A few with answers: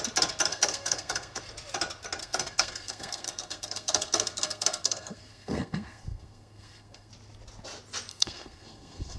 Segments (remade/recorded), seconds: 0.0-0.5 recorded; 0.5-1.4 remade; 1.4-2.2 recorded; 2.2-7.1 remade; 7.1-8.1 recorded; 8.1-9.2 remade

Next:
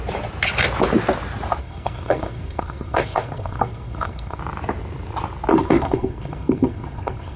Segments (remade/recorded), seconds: 0.0-1.6 recorded; 1.6-4.4 remade; 4.4-5.5 recorded; 5.5-7.4 remade

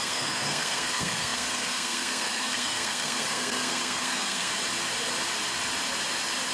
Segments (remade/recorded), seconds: 0.0-4.5 remade; 4.5-6.5 recorded